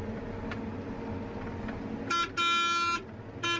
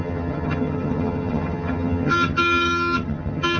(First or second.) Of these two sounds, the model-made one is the second